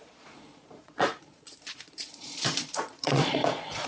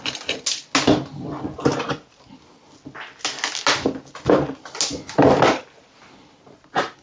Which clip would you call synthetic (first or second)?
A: first